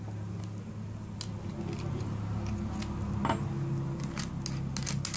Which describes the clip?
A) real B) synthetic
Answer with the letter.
A